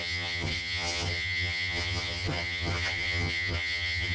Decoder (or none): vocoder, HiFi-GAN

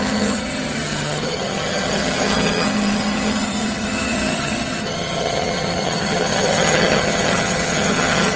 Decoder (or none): vocoder, HiFi-GAN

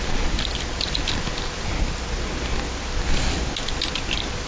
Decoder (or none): none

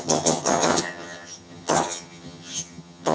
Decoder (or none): vocoder, HiFi-GAN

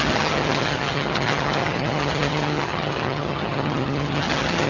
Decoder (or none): vocoder, HiFi-GAN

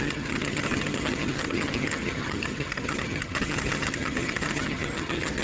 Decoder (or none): vocoder, HiFi-GAN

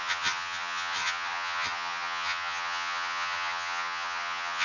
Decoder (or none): vocoder, HiFi-GAN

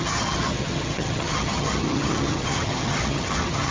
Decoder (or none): vocoder, HiFi-GAN